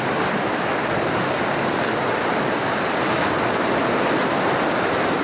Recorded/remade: recorded